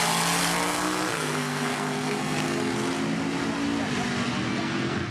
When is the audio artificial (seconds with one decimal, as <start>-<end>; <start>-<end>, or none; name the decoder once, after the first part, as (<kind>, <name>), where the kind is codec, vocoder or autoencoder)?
0.4-2.7 (codec, SNAC); 4.5-5.1